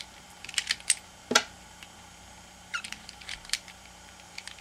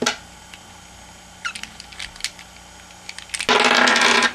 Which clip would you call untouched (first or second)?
second